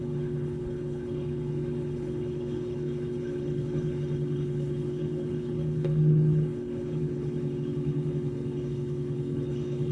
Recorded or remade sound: remade